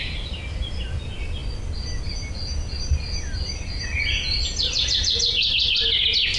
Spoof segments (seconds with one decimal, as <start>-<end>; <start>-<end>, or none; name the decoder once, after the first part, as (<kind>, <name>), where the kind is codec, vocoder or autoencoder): none